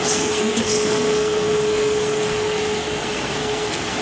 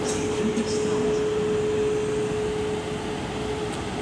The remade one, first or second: first